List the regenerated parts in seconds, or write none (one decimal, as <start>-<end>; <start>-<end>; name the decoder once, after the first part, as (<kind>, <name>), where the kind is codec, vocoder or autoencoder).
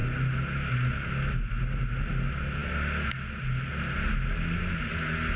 none